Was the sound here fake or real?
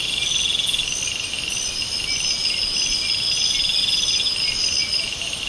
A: real